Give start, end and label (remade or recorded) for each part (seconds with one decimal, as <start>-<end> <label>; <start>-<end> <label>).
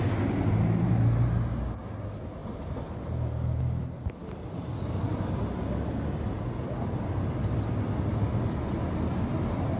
0.0-9.8 recorded